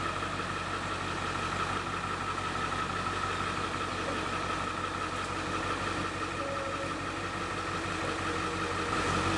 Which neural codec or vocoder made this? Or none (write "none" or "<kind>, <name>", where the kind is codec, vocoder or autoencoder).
none